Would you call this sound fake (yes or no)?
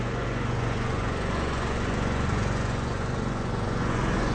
yes